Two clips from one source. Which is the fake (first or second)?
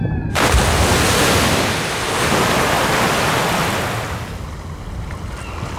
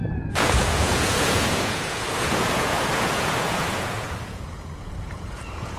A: second